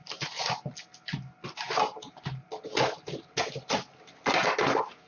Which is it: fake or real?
real